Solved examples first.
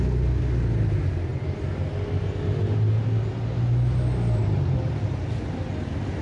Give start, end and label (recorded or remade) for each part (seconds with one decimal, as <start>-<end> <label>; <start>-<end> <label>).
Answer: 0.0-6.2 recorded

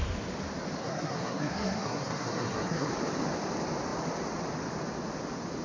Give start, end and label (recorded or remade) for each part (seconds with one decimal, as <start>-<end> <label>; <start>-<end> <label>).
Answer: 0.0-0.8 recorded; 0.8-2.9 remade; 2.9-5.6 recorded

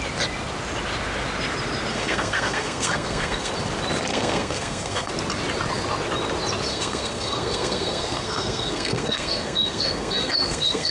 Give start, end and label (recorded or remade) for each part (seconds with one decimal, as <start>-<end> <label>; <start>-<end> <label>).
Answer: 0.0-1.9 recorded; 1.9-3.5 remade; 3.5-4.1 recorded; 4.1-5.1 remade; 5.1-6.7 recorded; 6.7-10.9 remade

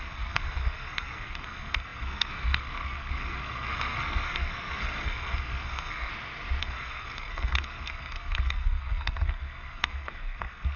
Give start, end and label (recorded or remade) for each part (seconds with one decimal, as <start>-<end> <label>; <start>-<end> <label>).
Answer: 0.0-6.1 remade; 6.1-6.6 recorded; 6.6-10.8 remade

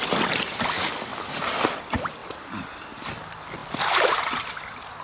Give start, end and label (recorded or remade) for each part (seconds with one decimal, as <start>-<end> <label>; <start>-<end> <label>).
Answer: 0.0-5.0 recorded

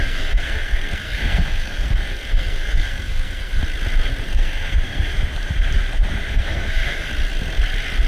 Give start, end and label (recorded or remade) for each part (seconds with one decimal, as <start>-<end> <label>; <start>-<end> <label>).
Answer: 0.0-3.6 remade; 3.6-4.2 recorded; 4.2-5.1 remade; 5.1-6.3 recorded; 6.3-7.1 remade; 7.1-8.1 recorded